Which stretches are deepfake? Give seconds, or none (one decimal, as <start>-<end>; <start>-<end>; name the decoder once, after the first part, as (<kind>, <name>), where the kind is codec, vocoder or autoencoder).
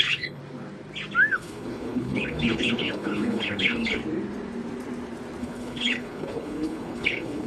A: 0.0-0.4 (codec, HILCodec); 1.3-4.0; 5.4-7.5